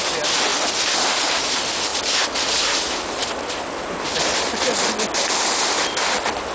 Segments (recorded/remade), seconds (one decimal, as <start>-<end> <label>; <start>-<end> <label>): 0.0-6.5 recorded